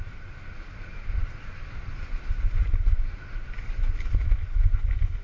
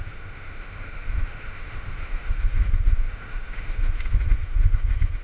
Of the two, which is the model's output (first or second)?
second